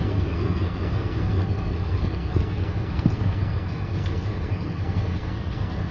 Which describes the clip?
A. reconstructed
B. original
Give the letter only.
A